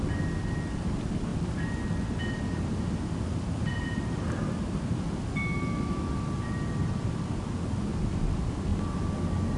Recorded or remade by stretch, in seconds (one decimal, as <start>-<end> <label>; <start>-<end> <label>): 0.0-5.4 recorded; 5.4-6.1 remade; 6.1-9.6 recorded